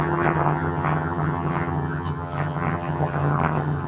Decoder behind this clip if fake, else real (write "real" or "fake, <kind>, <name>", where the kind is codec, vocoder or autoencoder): fake, vocoder, HiFi-GAN